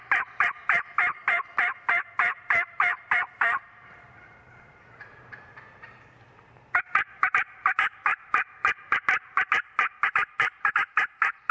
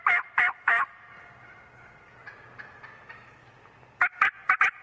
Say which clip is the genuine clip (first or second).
second